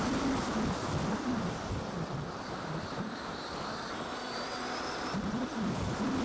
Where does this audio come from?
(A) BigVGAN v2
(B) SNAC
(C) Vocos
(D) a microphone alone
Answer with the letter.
A